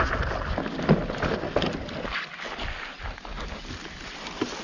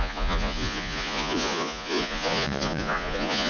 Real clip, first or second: first